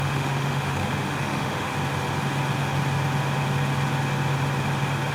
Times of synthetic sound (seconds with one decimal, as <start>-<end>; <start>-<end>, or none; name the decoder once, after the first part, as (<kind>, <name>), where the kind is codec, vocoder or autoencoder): 0.0-1.7 (autoencoder, DAC-VAE)